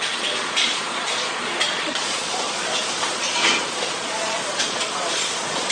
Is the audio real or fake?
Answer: fake